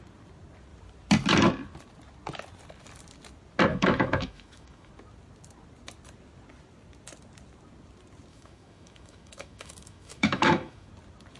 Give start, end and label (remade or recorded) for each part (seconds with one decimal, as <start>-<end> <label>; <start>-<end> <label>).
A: 0.0-3.7 recorded; 3.7-4.9 remade; 4.9-8.3 recorded; 8.3-10.9 remade; 10.9-11.4 recorded

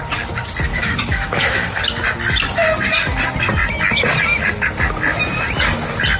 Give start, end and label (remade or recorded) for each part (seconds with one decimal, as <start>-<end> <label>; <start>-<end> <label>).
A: 0.0-0.7 recorded; 0.7-1.8 remade; 1.8-6.2 recorded

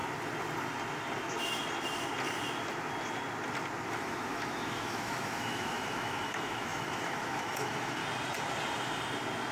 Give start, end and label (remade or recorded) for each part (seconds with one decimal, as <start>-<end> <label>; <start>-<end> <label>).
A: 0.0-3.9 recorded; 3.9-8.0 remade; 8.0-9.5 recorded